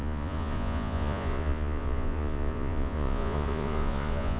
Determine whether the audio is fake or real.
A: fake